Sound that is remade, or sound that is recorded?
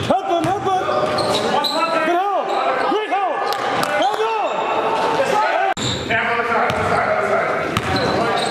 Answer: recorded